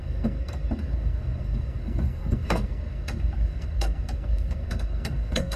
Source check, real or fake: fake